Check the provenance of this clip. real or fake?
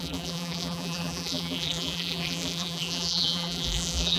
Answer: fake